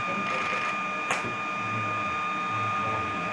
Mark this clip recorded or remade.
recorded